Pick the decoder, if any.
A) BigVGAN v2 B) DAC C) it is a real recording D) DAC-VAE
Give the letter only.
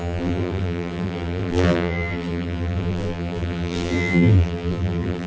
A